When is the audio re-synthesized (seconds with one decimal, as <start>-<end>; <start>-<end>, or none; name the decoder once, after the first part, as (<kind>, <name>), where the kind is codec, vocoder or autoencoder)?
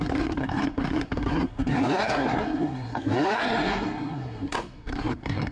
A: 0.0-5.5 (codec, SNAC)